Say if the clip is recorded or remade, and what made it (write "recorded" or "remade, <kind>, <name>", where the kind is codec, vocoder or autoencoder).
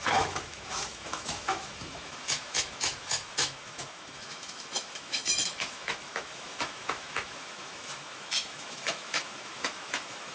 remade, autoencoder, DAC-VAE